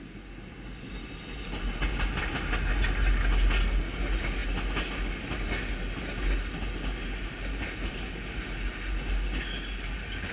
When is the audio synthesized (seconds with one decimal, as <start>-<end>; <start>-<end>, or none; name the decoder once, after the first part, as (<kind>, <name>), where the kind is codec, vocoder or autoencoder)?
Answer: none